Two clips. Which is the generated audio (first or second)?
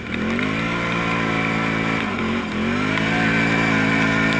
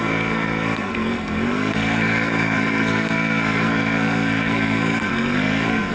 second